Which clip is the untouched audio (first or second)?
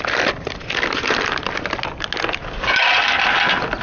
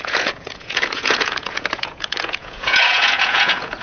first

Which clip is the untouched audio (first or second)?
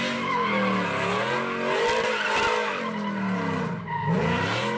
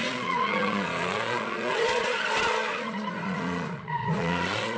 first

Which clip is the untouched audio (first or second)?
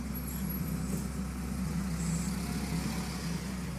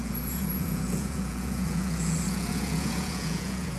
first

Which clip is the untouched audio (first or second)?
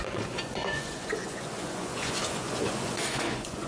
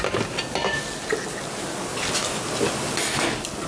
second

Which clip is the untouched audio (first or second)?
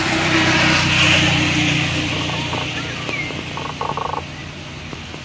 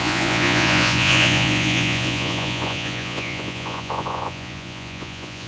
first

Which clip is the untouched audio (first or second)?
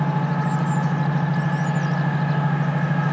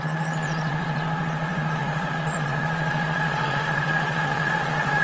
first